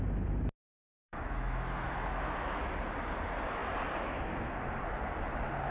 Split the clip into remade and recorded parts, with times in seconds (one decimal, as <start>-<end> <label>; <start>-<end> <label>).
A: 0.0-0.8 recorded; 0.8-2.7 remade; 2.7-5.7 recorded